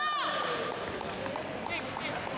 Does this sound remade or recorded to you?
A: recorded